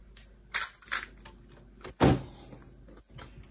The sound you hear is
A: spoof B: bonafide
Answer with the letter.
B